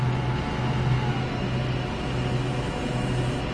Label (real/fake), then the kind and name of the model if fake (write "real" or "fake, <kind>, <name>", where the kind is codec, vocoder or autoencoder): real